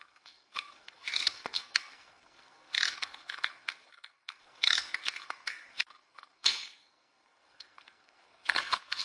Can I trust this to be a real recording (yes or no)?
no